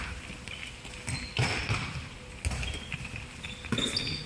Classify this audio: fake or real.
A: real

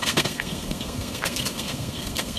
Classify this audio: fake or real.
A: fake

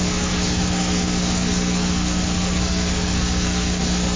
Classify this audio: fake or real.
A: fake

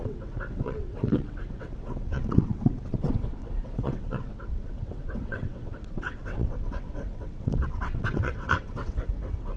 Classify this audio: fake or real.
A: fake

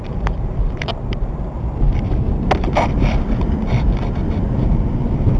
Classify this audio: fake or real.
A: fake